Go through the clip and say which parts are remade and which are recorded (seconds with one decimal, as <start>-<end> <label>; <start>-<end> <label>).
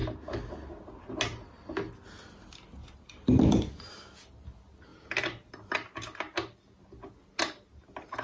0.0-2.8 recorded; 2.8-3.4 remade; 3.4-8.2 recorded